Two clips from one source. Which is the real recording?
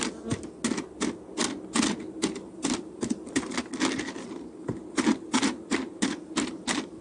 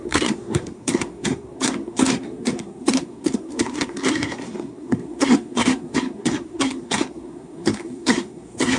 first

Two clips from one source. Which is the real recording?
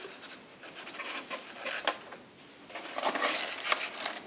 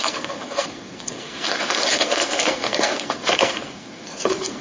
first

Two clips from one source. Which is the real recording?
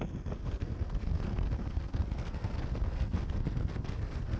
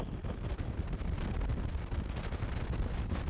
second